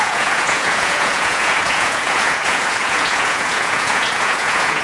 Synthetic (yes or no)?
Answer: yes